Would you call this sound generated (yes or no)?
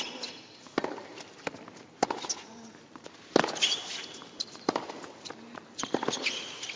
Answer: no